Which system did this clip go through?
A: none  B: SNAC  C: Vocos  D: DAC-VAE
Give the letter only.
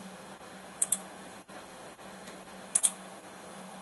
D